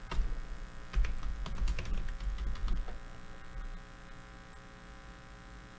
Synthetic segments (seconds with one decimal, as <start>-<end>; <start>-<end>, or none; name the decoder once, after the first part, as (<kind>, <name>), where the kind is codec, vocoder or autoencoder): none